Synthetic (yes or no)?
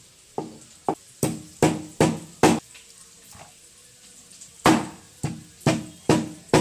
no